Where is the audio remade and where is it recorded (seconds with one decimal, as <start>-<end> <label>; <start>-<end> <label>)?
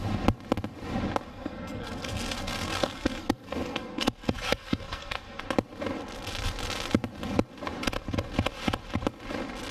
0.0-1.3 recorded; 1.3-5.4 remade; 5.4-9.7 recorded